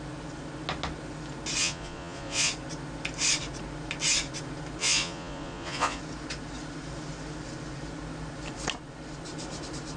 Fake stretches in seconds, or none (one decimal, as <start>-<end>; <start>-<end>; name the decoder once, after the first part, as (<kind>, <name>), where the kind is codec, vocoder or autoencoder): 1.6-2.5 (vocoder, Vocos); 4.8-6.0